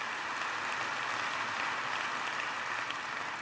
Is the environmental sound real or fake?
real